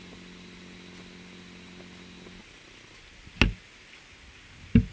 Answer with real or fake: real